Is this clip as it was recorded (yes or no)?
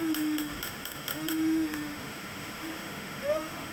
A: no